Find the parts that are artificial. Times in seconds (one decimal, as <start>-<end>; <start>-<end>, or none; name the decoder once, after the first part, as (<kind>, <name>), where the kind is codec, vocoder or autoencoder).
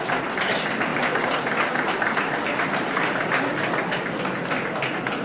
none